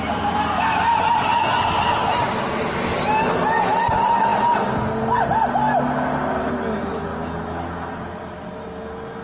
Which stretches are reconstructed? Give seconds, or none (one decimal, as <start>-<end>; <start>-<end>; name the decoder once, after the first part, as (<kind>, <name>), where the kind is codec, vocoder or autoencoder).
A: none